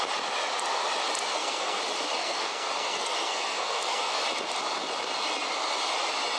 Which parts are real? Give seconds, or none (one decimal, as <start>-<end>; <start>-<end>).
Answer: 0.0-1.3; 1.8-2.2; 4.2-6.4